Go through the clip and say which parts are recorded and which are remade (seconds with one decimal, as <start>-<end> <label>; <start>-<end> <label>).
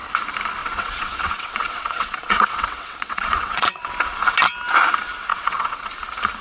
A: 0.0-0.6 recorded; 0.6-3.9 remade; 3.9-5.3 recorded; 5.3-5.9 remade; 5.9-6.4 recorded